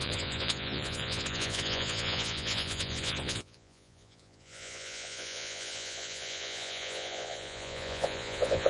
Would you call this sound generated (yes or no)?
yes